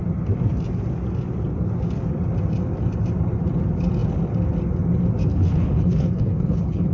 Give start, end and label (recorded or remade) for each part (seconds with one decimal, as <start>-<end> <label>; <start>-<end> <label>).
0.0-5.3 recorded; 5.3-6.9 remade

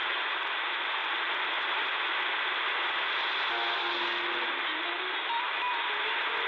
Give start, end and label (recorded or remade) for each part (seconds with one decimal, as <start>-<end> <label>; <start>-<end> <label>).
0.0-6.5 recorded

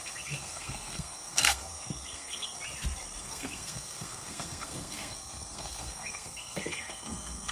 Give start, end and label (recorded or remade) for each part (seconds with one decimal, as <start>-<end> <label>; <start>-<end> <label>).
0.0-2.6 remade; 2.6-3.2 recorded; 3.2-7.5 remade

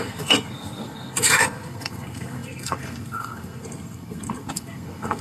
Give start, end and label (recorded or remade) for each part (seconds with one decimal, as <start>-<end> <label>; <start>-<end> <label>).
0.0-5.2 remade

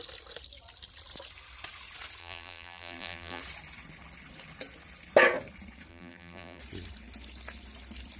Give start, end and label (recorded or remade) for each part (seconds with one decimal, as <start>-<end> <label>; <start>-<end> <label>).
0.0-2.2 recorded; 2.2-3.4 remade; 3.4-5.9 recorded; 5.9-6.6 remade; 6.6-8.2 recorded

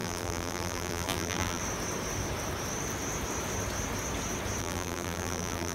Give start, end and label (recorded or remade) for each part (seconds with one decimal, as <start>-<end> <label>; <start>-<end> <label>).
0.0-1.6 remade; 1.6-4.6 recorded; 4.6-5.7 remade

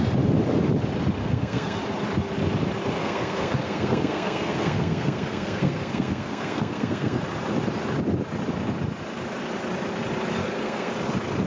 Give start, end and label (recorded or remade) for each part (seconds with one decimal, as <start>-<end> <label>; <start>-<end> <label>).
0.0-1.2 recorded; 1.2-1.8 remade; 1.8-3.0 recorded; 3.0-7.2 remade; 7.2-10.4 recorded; 10.4-10.9 remade; 10.9-11.5 recorded

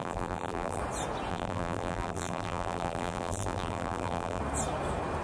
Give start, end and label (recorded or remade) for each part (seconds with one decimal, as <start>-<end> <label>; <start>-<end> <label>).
0.0-0.8 remade; 0.8-1.3 recorded; 1.3-4.4 remade; 4.4-5.2 recorded